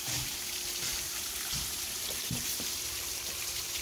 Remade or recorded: remade